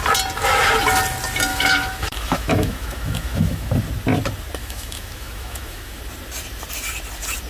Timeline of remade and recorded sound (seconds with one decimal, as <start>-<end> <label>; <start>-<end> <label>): 0.0-1.5 recorded; 1.5-3.7 remade; 3.7-4.6 recorded; 4.6-6.0 remade; 6.0-7.5 recorded